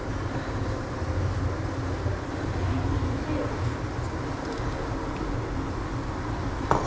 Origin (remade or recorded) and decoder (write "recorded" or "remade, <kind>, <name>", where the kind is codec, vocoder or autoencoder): recorded